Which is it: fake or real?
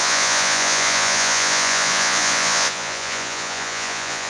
fake